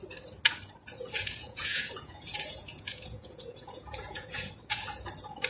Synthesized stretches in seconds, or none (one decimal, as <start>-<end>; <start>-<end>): 1.2-4.5